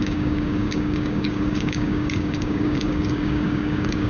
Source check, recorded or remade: remade